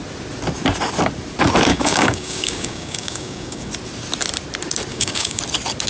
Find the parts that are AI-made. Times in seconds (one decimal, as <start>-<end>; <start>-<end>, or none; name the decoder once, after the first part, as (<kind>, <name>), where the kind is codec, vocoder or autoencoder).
1.7-3.7 (codec, DAC); 4.9-5.4